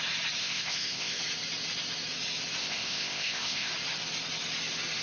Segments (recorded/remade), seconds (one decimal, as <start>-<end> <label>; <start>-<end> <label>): 0.0-0.4 recorded; 0.4-1.2 remade; 1.2-2.6 recorded; 2.6-3.7 remade; 3.7-5.0 recorded